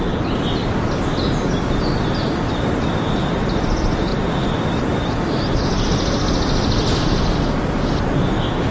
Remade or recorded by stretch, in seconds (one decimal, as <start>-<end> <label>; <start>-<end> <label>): 0.0-8.7 recorded